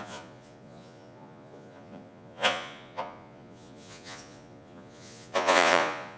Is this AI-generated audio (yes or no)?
yes